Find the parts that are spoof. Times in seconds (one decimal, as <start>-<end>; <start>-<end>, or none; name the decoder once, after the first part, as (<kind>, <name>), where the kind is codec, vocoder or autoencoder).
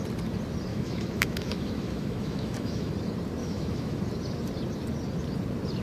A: 0.7-2.9 (autoencoder, DAC-VAE); 3.4-4.0